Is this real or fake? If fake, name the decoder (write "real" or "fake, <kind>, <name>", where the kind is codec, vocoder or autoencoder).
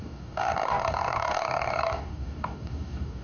fake, codec, DAC